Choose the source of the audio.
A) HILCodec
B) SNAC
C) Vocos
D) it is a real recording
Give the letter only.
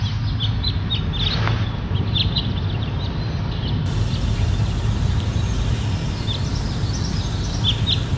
D